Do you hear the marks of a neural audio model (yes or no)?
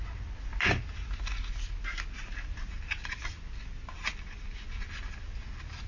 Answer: no